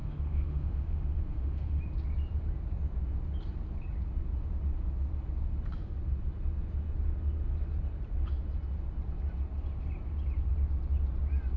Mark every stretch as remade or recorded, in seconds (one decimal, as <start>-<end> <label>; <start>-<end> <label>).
0.0-1.8 remade; 1.8-11.6 recorded